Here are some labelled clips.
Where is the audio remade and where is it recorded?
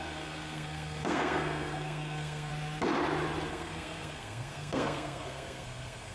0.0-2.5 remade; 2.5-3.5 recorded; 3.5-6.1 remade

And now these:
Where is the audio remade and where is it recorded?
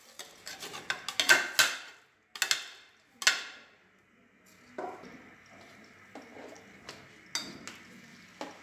0.0-8.6 recorded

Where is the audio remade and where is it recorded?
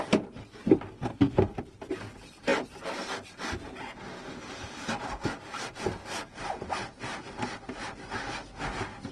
0.0-1.0 recorded; 1.0-1.6 remade; 1.6-9.1 recorded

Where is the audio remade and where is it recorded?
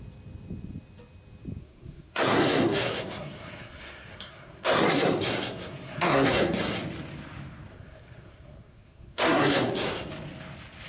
0.0-1.6 recorded; 1.6-6.8 remade; 6.8-7.7 recorded; 7.7-10.1 remade; 10.1-10.9 recorded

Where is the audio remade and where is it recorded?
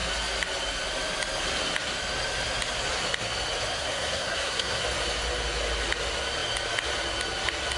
0.0-3.8 recorded; 3.8-4.8 remade; 4.8-7.8 recorded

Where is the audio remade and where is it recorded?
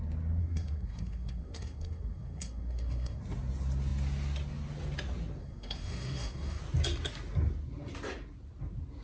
0.0-0.4 recorded; 0.4-3.2 remade; 3.2-5.4 recorded; 5.4-6.6 remade; 6.6-9.0 recorded